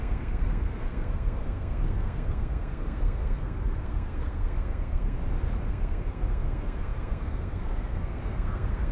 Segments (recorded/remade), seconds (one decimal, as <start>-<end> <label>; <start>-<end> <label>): 0.0-5.2 remade; 5.2-5.7 recorded; 5.7-8.9 remade